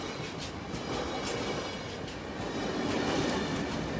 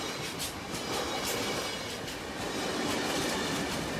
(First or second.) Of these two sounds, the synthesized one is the second